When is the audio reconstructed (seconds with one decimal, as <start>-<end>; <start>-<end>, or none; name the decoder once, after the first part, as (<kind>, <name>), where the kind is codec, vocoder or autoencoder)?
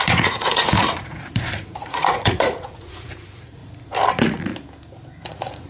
0.0-3.6 (vocoder, Vocos); 4.1-4.5; 5.3-5.7